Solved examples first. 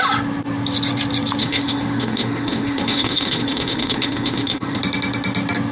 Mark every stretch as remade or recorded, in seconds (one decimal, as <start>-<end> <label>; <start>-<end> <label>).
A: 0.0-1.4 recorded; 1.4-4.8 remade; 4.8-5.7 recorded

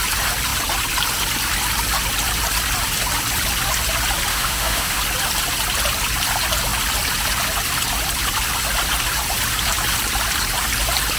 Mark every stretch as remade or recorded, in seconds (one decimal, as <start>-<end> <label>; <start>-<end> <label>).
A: 0.0-4.3 recorded; 4.3-5.0 remade; 5.0-11.2 recorded

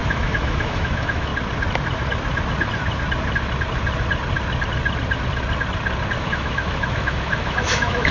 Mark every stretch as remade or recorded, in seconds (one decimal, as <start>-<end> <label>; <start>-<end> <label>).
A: 0.0-1.3 remade; 1.3-6.2 recorded; 6.2-8.1 remade

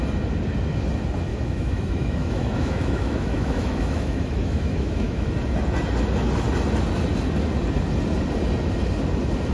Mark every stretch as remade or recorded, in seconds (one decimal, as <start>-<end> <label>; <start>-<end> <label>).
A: 0.0-1.3 recorded; 1.3-5.3 remade; 5.3-9.5 recorded